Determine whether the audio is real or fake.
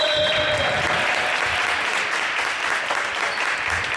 real